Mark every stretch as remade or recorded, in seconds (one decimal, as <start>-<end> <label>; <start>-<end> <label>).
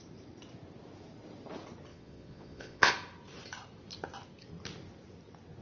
0.0-1.9 recorded; 1.9-2.9 remade; 2.9-5.6 recorded